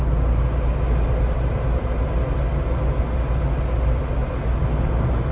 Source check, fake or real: real